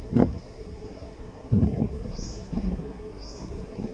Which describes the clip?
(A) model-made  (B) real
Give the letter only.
A